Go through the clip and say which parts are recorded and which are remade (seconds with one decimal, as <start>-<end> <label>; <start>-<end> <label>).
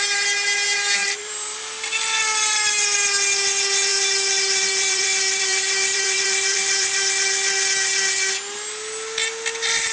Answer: 0.0-1.0 recorded; 1.0-1.6 remade; 1.6-3.9 recorded; 3.9-7.1 remade; 7.1-9.9 recorded